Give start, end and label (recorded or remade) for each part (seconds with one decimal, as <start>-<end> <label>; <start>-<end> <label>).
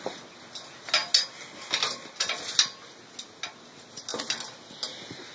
0.0-5.3 recorded